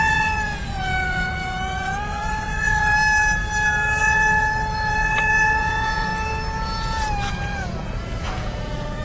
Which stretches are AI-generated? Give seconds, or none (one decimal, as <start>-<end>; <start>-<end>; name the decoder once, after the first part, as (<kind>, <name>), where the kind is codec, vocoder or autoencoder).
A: 0.0-2.9 (vocoder, Vocos); 4.0-6.1; 7.3-9.0